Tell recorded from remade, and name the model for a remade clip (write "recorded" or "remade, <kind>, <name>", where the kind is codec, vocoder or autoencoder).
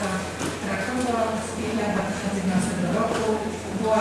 remade, vocoder, BigVGAN v2